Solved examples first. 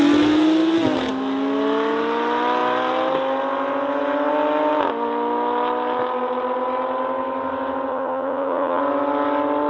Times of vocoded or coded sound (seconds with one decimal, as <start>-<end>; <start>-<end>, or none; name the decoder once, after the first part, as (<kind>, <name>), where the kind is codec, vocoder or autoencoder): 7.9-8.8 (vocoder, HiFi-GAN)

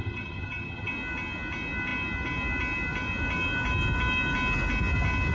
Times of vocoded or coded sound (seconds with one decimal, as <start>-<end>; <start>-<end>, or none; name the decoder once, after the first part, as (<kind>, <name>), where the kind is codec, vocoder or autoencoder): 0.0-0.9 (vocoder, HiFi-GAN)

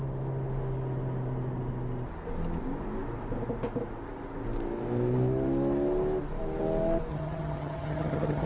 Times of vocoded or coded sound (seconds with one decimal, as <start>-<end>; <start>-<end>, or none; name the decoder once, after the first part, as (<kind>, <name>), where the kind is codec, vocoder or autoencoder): 7.1-8.5 (vocoder, HiFi-GAN)

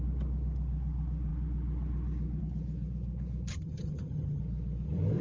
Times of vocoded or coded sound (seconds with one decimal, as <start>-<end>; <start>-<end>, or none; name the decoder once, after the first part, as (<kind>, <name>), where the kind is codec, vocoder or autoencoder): 3.5-4.4 (vocoder, HiFi-GAN)

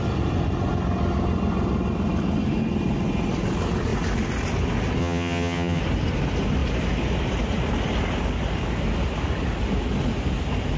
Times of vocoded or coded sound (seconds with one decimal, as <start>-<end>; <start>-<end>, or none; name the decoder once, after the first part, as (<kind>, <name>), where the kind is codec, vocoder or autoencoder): 5.0-5.8 (vocoder, HiFi-GAN)

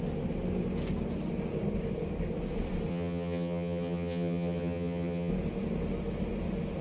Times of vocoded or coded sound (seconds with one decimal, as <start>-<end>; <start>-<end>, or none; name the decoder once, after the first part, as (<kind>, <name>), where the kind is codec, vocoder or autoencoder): 2.9-5.3 (vocoder, HiFi-GAN)

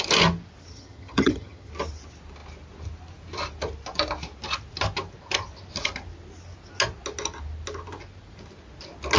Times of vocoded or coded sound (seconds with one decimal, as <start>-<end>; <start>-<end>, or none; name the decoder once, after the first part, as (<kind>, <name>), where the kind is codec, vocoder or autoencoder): 0.7-1.7 (vocoder, HiFi-GAN)